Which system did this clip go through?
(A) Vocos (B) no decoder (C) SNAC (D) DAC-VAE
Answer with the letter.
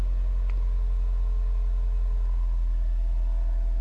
B